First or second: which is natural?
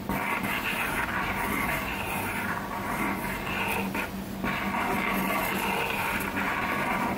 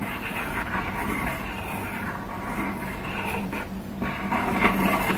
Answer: first